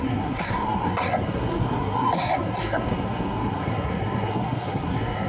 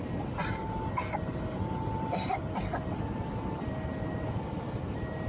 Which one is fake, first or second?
first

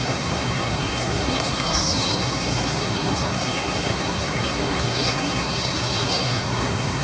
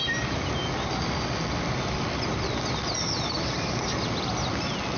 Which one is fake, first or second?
first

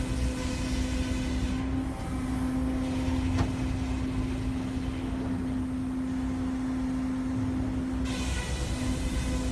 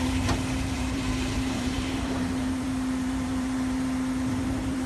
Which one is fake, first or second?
second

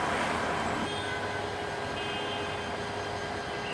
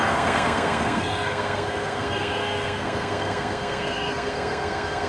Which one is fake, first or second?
second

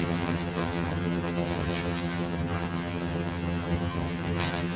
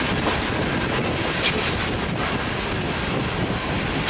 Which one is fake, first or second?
first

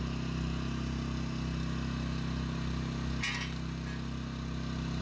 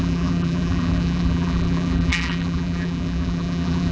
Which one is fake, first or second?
second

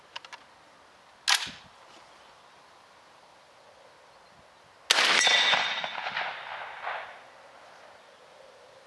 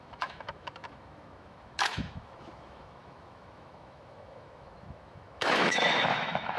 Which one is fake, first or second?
second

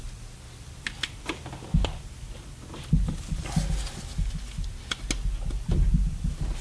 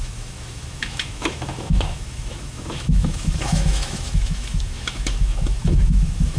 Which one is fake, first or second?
second